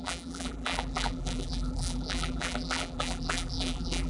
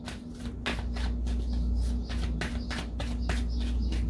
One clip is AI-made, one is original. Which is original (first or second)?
second